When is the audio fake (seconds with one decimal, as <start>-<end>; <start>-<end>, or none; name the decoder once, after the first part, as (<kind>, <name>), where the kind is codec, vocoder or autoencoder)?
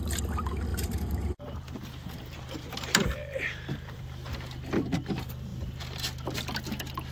0.7-4.0 (vocoder, BigVGAN v2)